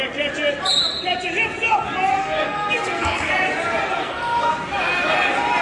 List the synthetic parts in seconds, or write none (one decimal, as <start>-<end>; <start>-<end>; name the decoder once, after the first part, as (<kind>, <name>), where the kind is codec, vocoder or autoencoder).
2.1-3.3 (codec, SNAC); 4.0-4.5